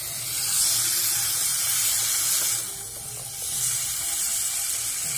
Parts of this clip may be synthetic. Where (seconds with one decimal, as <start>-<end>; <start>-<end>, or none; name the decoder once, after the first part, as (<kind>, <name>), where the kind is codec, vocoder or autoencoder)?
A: none